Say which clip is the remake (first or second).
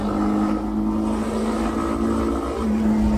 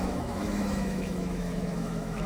second